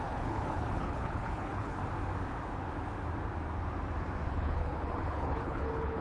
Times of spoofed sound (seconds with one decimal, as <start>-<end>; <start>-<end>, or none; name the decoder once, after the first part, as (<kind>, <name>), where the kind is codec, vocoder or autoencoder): 0.0-1.8 (codec, HILCodec); 4.3-6.0